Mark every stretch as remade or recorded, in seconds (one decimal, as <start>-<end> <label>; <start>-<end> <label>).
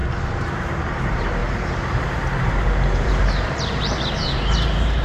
0.0-0.8 recorded; 0.8-5.0 remade